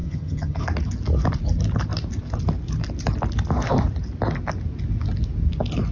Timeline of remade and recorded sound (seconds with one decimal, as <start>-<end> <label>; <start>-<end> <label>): 0.0-0.6 remade; 0.6-5.9 recorded

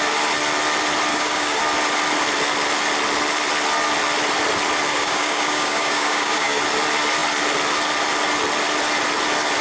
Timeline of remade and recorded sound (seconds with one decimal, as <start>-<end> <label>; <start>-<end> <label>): 0.0-1.1 recorded; 1.1-1.6 remade; 1.6-4.9 recorded; 4.9-6.6 remade; 6.6-9.6 recorded

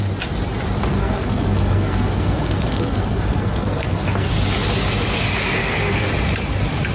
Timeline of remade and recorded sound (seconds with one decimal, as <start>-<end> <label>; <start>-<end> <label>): 0.0-0.9 recorded; 0.9-4.3 remade; 4.3-5.6 recorded; 5.6-6.1 remade; 6.1-6.9 recorded

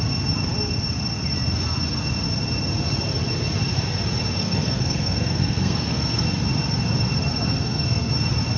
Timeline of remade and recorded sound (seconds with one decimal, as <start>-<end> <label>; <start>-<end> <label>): 0.0-4.4 recorded; 4.4-6.2 remade; 6.2-7.5 recorded; 7.5-8.1 remade; 8.1-8.6 recorded

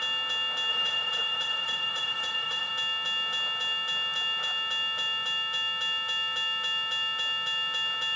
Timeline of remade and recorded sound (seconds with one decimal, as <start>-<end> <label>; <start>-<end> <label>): 0.0-0.7 recorded; 0.7-2.7 remade; 2.7-8.2 recorded

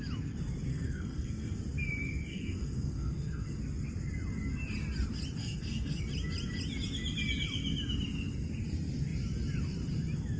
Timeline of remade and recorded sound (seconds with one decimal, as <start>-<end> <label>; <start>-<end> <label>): 0.0-0.7 recorded; 0.7-1.6 remade; 1.6-2.3 recorded; 2.3-3.6 remade; 3.6-5.4 recorded; 5.4-6.0 remade; 6.0-10.4 recorded